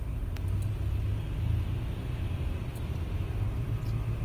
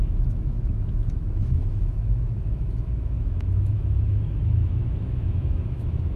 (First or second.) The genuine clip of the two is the first